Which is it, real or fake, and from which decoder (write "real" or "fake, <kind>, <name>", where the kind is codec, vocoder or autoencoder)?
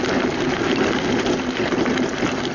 real